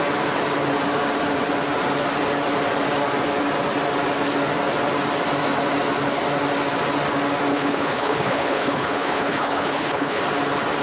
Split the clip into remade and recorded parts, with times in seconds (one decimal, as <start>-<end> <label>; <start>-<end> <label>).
0.0-7.5 recorded; 7.5-10.2 remade; 10.2-10.8 recorded